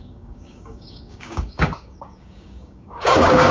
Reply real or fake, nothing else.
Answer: fake